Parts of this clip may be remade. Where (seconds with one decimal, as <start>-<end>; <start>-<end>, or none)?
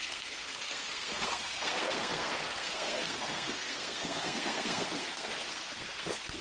0.0-6.4